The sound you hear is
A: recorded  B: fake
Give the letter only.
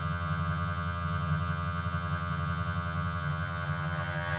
B